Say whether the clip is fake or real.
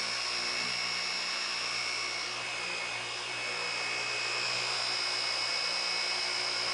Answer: real